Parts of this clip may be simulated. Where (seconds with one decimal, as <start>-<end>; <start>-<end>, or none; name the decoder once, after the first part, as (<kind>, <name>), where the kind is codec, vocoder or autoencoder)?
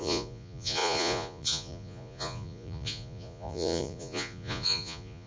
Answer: 0.0-5.3 (vocoder, Vocos)